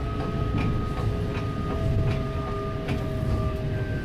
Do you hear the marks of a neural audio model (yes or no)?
no